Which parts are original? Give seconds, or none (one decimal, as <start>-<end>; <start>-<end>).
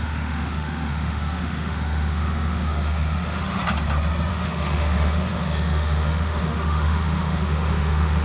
3.6-4.3